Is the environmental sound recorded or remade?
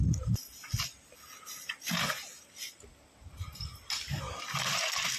recorded